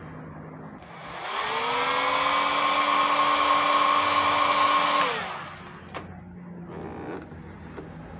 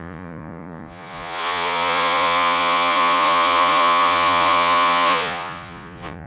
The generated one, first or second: second